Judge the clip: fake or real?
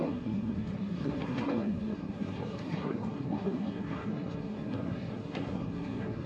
fake